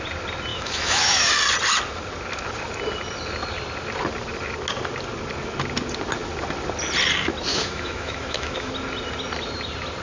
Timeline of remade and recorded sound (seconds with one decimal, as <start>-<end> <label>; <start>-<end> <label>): 0.0-0.5 recorded; 0.5-1.3 remade; 1.3-7.5 recorded; 7.5-8.7 remade; 8.7-10.0 recorded